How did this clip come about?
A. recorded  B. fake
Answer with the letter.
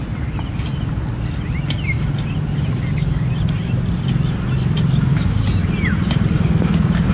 A